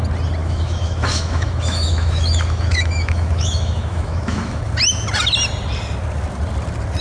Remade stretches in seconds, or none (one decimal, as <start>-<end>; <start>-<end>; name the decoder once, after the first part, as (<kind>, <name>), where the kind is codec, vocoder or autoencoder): 0.4-4.6 (autoencoder, DAC-VAE)